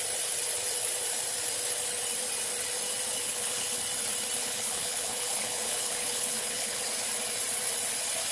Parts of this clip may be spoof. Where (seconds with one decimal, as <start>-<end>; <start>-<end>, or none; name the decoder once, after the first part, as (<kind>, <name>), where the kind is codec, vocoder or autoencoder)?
3.2-3.8 (codec, HILCodec); 4.4-6.8